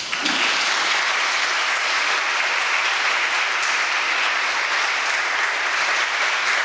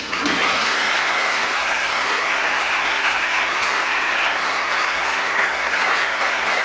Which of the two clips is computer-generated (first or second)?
second